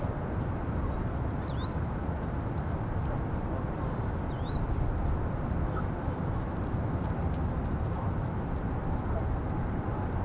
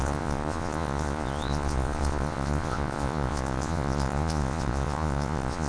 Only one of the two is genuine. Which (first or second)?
first